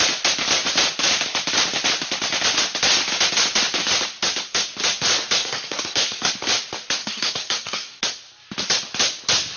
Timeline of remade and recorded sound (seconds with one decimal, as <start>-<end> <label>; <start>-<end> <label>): 0.0-5.4 recorded; 5.4-6.3 remade; 6.3-7.0 recorded; 7.0-8.0 remade; 8.0-9.6 recorded